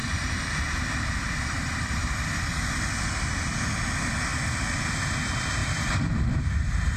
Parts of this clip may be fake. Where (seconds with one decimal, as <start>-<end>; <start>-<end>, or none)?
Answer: 0.0-2.1; 5.6-7.0